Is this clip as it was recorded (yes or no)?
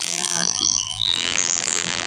no